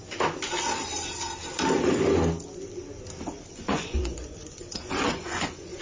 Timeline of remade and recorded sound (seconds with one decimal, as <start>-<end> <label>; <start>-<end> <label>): 0.0-3.5 recorded; 3.5-5.8 remade